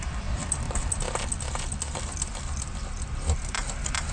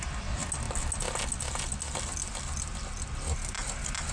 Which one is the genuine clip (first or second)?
second